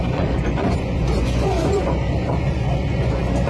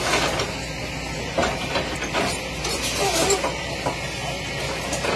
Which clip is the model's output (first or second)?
first